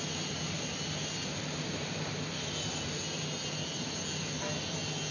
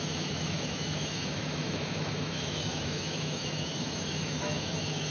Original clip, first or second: first